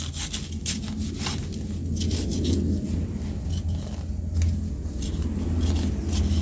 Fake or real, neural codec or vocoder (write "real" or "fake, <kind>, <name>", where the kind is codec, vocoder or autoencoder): real